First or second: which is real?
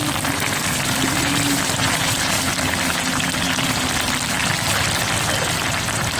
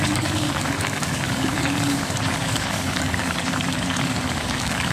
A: first